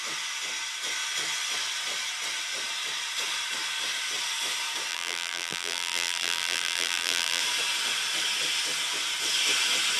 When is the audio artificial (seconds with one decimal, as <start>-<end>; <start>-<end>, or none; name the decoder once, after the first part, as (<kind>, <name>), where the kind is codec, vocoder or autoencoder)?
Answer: 4.9-7.4 (vocoder, BigVGAN v2)